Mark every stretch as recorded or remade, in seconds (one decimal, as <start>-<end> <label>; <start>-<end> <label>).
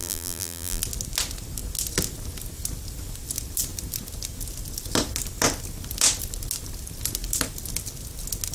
0.0-0.8 remade; 0.8-8.5 recorded